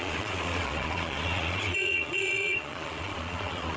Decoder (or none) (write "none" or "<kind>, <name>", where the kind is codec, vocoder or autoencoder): vocoder, Vocos